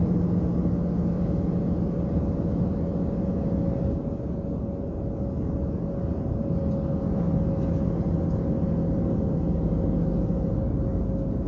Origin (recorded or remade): recorded